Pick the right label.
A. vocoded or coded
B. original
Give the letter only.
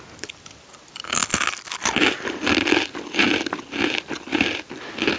B